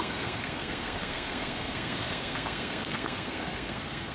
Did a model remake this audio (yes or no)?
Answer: yes